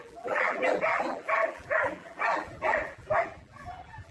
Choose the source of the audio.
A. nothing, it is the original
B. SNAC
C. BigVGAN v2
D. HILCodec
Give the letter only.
C